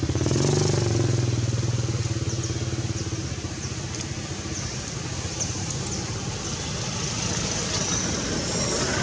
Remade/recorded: recorded